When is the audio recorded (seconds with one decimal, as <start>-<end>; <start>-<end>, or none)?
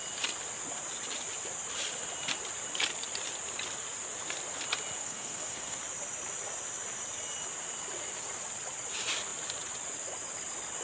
0.0-5.0; 5.8-10.8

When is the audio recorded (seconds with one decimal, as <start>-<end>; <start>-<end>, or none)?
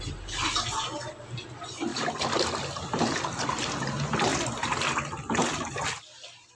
0.0-4.3; 5.7-6.6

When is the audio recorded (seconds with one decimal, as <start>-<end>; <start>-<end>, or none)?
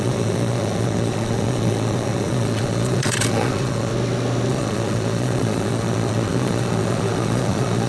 3.9-4.5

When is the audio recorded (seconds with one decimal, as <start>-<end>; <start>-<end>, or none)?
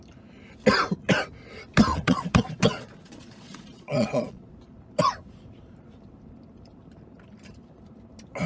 0.0-1.9; 4.5-8.5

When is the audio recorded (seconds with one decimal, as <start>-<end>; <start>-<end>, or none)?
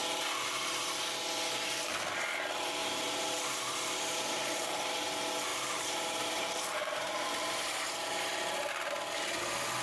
0.0-2.8; 4.9-5.5; 8.1-9.8